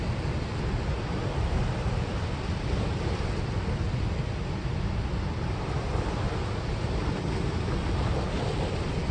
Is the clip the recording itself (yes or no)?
yes